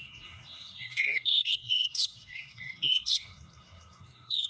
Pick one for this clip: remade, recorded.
remade